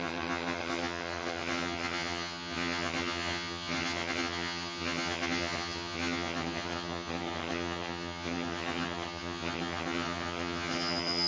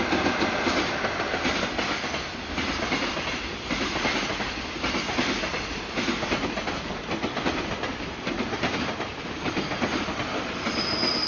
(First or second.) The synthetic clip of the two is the first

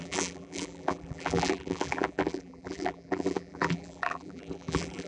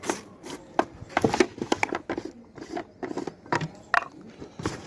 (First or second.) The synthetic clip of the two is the first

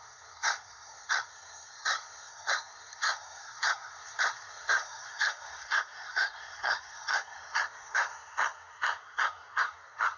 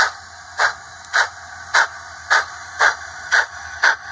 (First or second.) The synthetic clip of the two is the first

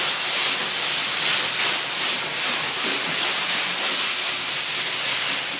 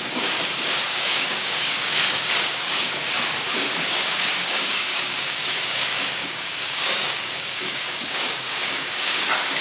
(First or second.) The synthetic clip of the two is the second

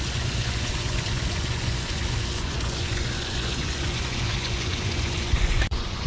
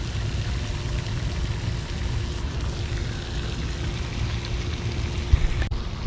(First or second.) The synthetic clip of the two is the first